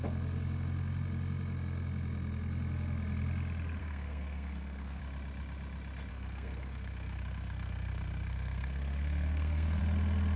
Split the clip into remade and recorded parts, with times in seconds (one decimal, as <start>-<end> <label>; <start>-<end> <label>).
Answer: 0.0-3.8 recorded; 3.8-5.0 remade; 5.0-6.1 recorded; 6.1-9.8 remade; 9.8-10.4 recorded